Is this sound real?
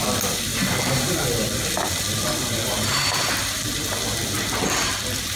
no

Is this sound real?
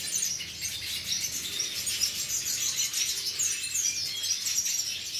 yes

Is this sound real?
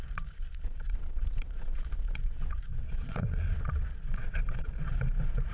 no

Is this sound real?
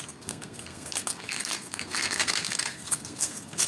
no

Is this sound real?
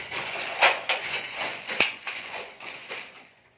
no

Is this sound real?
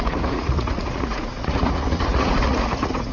no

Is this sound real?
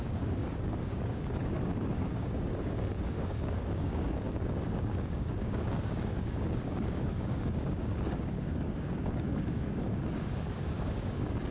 no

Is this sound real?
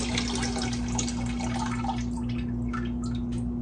yes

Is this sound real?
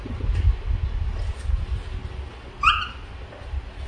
yes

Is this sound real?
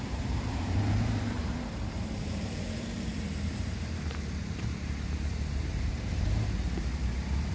no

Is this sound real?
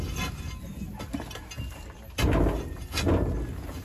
yes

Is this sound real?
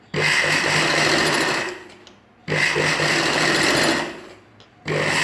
yes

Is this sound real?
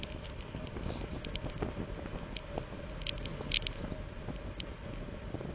yes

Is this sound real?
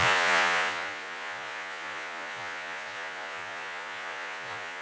no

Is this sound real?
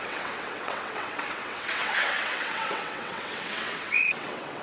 no